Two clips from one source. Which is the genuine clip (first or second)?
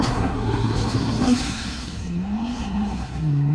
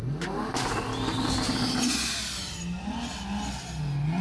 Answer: second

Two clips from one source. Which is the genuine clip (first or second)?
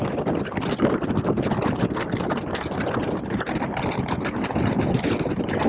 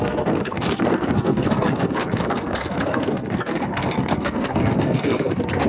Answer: first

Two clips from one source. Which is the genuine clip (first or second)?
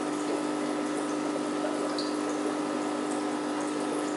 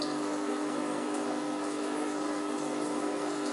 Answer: first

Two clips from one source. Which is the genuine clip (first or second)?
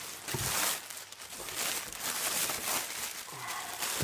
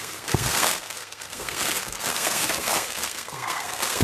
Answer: first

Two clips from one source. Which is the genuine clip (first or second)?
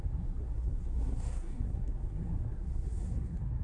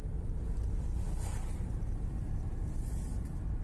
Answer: second